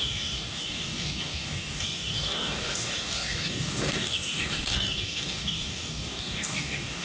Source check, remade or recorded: remade